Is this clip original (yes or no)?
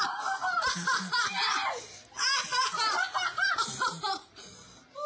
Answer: yes